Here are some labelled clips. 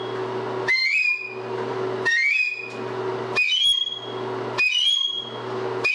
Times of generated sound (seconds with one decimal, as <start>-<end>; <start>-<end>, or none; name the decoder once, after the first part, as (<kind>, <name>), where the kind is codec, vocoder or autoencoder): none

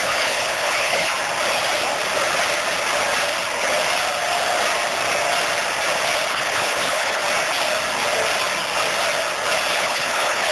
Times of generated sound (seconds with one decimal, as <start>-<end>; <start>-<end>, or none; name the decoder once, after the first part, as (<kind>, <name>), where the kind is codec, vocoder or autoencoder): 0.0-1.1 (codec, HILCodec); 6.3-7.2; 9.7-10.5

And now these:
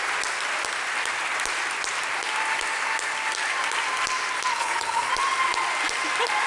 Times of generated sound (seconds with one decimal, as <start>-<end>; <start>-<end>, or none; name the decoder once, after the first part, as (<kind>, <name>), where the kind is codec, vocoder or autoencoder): 4.5-5.1 (codec, HILCodec)

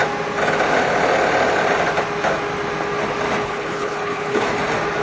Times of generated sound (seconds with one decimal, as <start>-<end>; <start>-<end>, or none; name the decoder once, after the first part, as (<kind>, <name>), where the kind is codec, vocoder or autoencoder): 3.4-4.5 (codec, HILCodec)

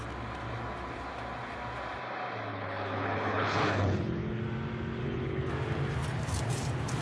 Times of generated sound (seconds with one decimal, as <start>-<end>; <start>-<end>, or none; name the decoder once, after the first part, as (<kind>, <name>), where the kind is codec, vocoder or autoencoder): 2.5-4.4 (codec, HILCodec); 5.0-5.5